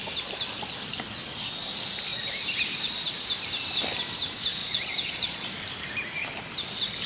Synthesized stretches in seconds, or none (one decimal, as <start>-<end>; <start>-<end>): 4.6-5.5